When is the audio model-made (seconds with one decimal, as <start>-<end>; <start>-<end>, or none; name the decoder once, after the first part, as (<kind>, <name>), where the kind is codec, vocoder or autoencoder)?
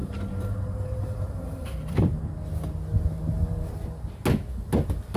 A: 0.0-2.2 (vocoder, BigVGAN v2)